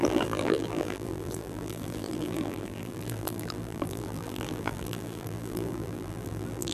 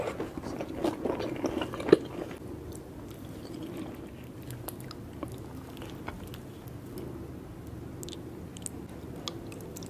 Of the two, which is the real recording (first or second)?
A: second